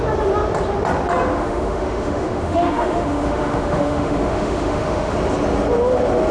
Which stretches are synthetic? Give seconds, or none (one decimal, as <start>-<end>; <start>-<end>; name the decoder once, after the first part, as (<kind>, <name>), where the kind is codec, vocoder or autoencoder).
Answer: 1.3-5.1 (autoencoder, DAC-VAE)